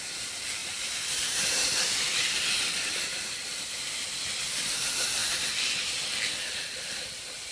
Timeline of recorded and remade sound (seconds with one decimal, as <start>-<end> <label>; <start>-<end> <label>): 0.0-7.5 remade